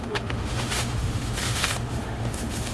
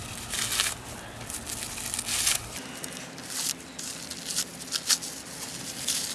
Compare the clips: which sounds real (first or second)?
second